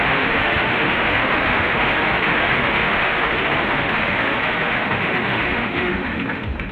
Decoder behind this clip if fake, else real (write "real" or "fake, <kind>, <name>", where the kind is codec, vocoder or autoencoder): fake, autoencoder, DAC-VAE